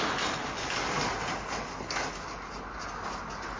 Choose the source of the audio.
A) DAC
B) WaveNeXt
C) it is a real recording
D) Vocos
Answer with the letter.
C